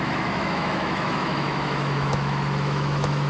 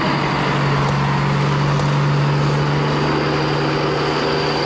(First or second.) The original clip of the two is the second